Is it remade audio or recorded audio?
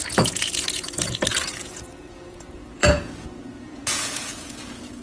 remade